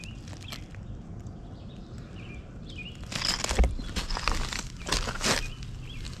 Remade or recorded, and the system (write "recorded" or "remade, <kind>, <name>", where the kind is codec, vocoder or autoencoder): recorded